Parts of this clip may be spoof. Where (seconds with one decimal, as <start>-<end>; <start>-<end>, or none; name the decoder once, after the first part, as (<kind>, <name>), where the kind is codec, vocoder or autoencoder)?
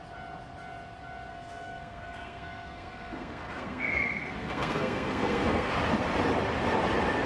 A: 1.3-5.7 (codec, SNAC)